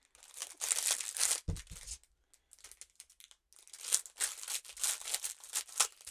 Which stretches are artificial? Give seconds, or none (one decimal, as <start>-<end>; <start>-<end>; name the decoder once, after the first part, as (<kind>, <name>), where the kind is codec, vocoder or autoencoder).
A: none